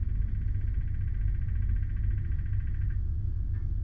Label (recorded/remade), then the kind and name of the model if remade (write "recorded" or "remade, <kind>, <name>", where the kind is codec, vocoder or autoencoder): recorded